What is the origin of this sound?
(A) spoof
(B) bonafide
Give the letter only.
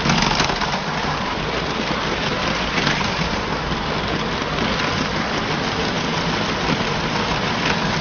B